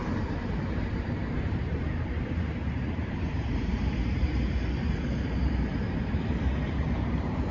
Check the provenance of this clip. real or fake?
fake